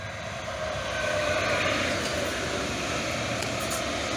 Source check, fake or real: real